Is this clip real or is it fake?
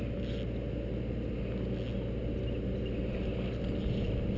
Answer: real